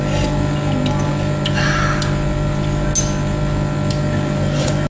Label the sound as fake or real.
real